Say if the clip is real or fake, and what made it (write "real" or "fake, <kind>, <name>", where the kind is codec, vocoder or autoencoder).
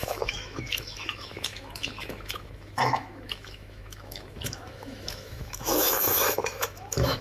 fake, autoencoder, DAC-VAE